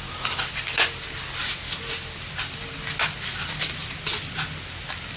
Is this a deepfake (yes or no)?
no